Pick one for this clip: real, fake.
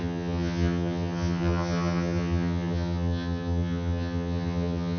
fake